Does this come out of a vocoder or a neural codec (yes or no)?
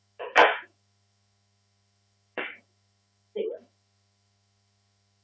yes